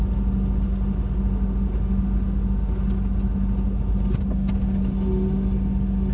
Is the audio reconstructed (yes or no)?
no